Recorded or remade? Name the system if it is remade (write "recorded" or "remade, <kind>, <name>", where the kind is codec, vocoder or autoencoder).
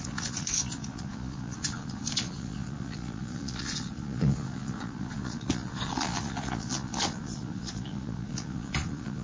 remade, vocoder, Vocos